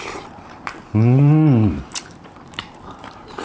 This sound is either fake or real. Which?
fake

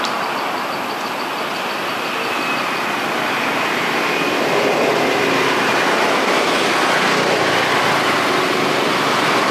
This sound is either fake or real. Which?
real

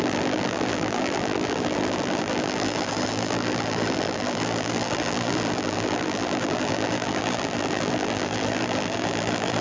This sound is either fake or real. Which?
fake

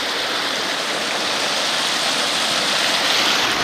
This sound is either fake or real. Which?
real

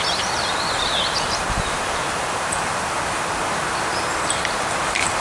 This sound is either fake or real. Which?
fake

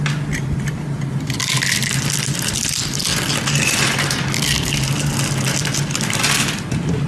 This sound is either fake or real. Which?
real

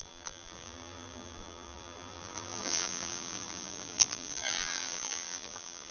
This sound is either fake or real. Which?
fake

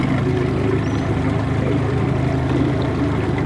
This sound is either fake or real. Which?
real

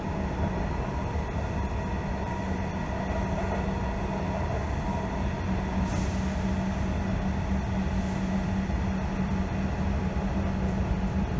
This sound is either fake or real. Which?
real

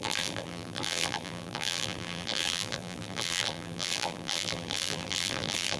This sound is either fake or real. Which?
fake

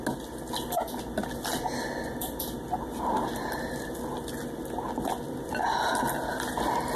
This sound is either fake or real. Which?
real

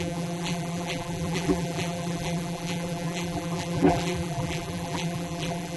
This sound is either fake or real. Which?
fake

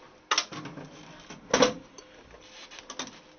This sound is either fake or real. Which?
real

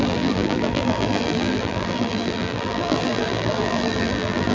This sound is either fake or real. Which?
fake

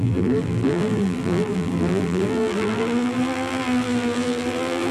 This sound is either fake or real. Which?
fake